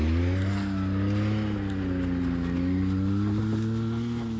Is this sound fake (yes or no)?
no